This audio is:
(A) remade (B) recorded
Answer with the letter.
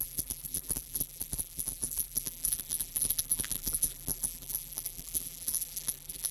A